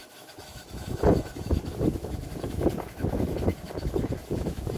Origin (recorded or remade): remade